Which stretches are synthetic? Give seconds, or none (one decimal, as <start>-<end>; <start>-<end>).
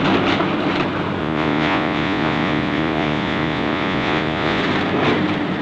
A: 1.2-4.6